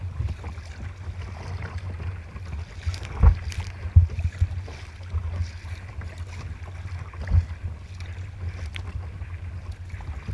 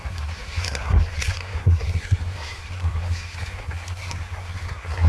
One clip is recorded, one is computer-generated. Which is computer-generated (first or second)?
second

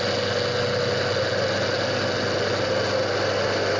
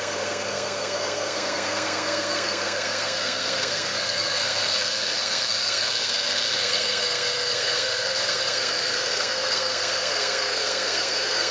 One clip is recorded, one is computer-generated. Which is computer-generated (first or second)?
second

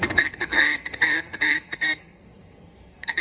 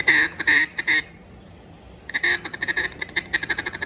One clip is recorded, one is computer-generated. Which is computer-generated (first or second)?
first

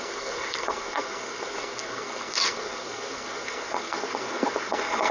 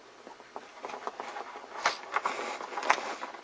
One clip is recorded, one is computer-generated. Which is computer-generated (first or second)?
first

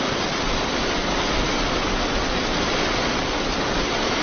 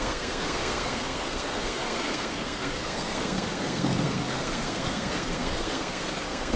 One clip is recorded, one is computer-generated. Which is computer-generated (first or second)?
second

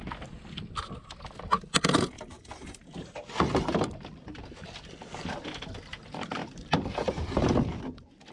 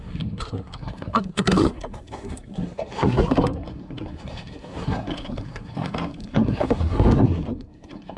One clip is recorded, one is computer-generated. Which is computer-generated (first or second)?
second